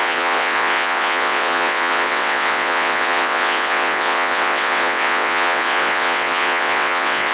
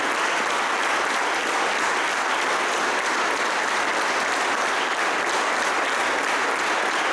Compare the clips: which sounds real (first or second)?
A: second